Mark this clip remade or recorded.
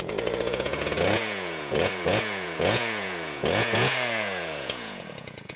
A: remade